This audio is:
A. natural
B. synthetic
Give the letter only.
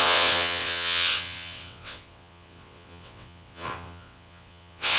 B